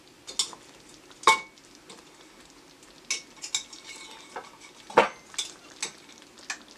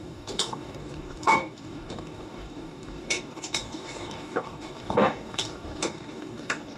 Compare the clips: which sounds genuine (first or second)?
first